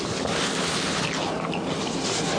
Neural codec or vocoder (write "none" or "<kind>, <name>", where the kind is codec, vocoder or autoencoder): none